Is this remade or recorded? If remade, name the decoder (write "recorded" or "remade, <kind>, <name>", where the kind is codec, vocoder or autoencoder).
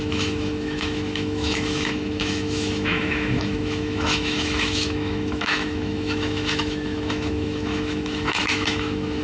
remade, autoencoder, DAC-VAE